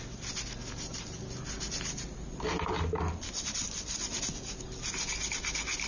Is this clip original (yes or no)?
yes